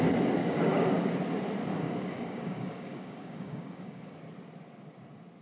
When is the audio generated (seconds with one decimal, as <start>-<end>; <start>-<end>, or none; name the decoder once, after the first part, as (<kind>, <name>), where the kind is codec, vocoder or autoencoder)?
0.4-1.1 (codec, DAC); 1.7-4.1